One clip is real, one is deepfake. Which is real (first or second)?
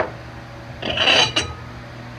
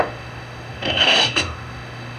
first